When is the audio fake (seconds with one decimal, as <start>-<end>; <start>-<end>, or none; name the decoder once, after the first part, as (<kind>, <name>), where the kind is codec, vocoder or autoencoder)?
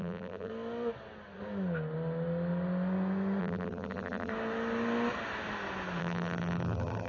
0.0-0.5 (vocoder, BigVGAN v2); 3.4-4.3; 6.0-7.1